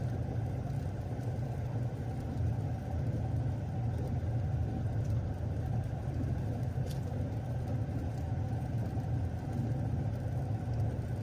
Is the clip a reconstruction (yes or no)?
no